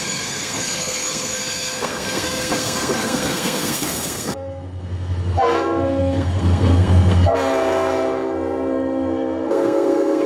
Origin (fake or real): fake